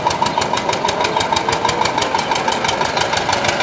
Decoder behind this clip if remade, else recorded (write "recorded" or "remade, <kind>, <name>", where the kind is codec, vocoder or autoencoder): recorded